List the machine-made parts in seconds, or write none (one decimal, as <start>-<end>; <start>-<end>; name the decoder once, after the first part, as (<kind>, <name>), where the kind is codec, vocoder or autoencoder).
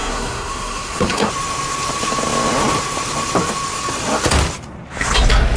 0.0-1.3 (codec, SNAC)